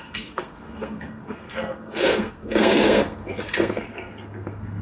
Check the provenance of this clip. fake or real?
fake